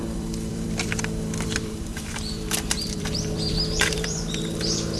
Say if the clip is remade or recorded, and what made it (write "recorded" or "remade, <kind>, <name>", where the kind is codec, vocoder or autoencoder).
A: remade, vocoder, BigVGAN v2